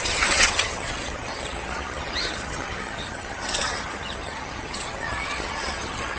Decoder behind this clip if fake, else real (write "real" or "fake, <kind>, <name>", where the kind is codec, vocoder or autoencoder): fake, vocoder, HiFi-GAN